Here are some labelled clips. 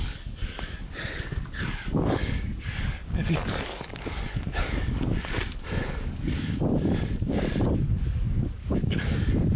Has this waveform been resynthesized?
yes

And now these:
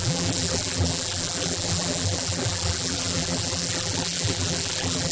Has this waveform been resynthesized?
yes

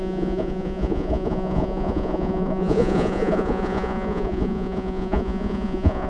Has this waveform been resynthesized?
yes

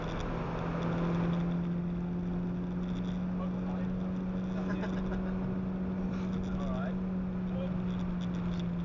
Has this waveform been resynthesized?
no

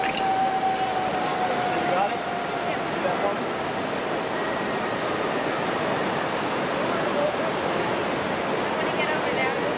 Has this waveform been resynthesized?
no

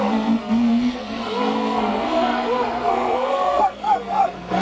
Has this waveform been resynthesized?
yes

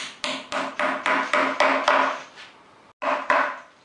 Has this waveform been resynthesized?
no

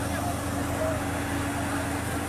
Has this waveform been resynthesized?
no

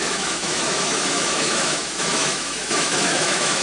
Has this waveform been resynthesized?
yes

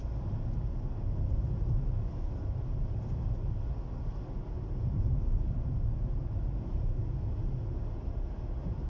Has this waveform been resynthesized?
no